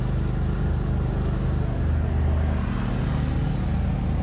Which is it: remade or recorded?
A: recorded